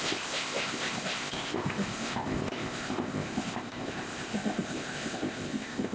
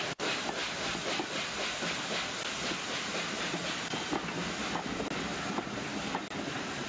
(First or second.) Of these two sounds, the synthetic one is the first